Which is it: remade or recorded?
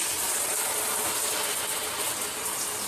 recorded